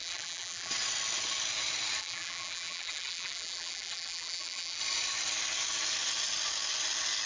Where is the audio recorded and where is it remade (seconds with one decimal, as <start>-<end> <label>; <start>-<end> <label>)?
0.0-0.7 remade; 0.7-2.0 recorded; 2.0-4.8 remade; 4.8-7.3 recorded